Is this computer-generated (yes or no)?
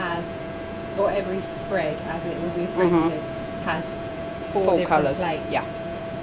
yes